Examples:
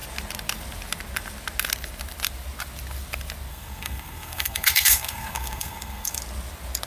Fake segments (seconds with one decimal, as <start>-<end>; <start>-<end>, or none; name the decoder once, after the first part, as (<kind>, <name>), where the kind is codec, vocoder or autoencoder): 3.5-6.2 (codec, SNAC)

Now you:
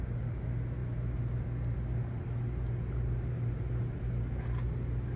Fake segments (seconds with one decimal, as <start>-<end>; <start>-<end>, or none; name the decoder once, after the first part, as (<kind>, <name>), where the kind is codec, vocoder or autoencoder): none

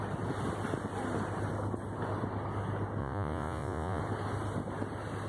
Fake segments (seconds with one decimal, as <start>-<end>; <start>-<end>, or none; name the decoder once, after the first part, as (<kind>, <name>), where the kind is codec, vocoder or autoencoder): 3.0-4.0 (vocoder, Vocos)

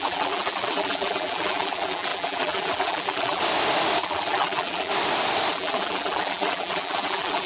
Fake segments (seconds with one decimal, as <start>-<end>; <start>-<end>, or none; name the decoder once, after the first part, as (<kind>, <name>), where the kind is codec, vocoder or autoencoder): 0.0-3.4 (vocoder, BigVGAN v2); 4.0-4.9; 5.5-7.5

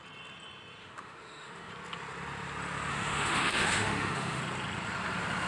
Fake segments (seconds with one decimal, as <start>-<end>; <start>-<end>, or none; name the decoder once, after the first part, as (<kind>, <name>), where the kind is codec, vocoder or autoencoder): 0.8-1.7 (autoencoder, DAC-VAE); 2.9-4.4

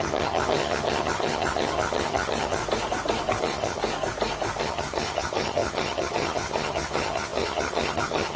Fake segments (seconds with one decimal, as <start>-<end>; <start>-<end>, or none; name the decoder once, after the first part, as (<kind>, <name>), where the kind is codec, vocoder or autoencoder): 0.0-2.6 (vocoder, HiFi-GAN); 3.4-3.8; 4.6-8.4

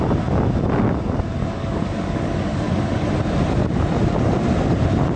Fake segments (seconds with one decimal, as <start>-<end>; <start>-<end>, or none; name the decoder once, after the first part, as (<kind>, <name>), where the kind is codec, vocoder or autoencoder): 1.4-3.1 (codec, DAC)